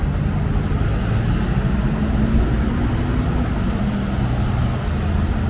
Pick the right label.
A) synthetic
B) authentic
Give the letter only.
B